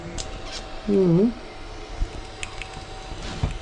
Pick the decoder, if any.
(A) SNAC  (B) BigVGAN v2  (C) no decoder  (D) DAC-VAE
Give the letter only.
C